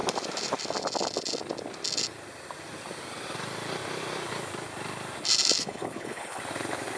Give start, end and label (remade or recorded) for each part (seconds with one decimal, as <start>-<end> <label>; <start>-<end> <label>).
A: 0.0-5.6 recorded; 5.6-6.4 remade; 6.4-7.0 recorded